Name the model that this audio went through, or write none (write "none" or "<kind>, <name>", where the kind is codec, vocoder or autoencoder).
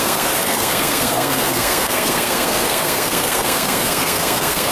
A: codec, SNAC